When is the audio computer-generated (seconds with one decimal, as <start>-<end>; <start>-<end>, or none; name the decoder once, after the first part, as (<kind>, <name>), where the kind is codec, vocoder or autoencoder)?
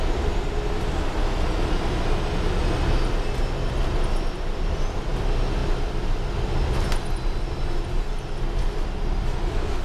5.6-6.3 (vocoder, BigVGAN v2)